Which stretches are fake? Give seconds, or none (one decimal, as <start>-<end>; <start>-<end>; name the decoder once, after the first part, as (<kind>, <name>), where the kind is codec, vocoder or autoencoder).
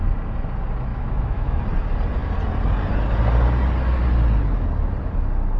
0.9-1.6 (autoencoder, DAC-VAE)